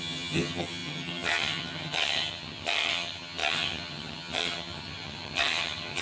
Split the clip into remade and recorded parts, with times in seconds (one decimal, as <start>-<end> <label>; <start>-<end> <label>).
0.0-6.0 remade